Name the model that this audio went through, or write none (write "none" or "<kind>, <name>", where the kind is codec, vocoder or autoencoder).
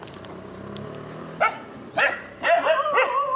none